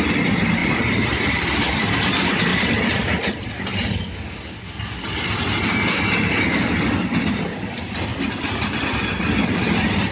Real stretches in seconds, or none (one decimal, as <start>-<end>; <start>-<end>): 0.0-2.5; 3.5-10.1